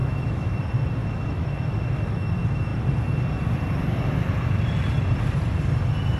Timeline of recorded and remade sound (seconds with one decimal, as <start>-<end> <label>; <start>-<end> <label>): 0.0-0.6 remade; 0.6-1.0 recorded; 1.0-2.3 remade; 2.3-6.2 recorded